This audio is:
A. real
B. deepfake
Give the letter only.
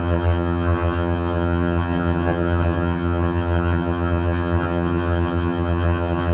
B